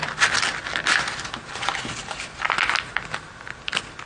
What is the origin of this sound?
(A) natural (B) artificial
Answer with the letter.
A